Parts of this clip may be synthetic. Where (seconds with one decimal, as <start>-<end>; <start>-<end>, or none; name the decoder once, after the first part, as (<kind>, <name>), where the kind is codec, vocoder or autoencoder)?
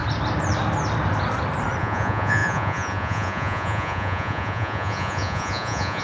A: 1.8-6.0 (vocoder, Vocos)